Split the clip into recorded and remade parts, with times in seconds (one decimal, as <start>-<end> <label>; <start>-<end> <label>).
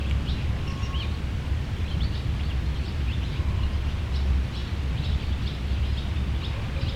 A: 0.0-7.0 recorded